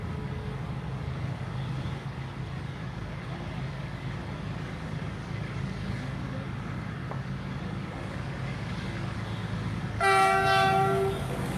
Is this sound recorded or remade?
remade